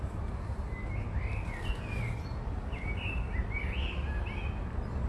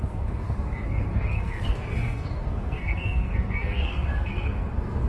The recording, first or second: first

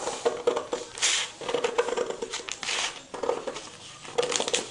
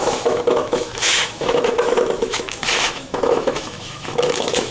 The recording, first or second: first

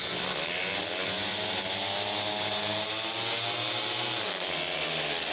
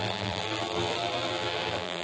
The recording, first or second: first